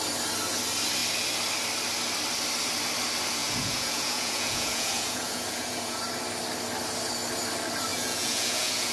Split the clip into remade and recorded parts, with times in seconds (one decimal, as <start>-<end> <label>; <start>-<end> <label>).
0.0-3.4 recorded; 3.4-6.0 remade; 6.0-7.9 recorded; 7.9-8.9 remade